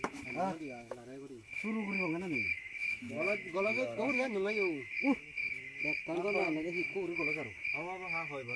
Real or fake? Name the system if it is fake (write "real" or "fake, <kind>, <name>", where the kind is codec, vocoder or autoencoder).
fake, autoencoder, DAC-VAE